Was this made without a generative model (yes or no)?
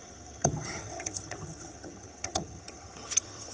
no